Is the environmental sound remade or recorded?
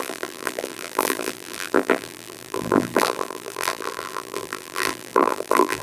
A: remade